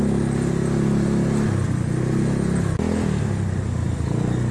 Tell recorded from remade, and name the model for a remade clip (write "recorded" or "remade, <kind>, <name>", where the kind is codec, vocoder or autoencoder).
recorded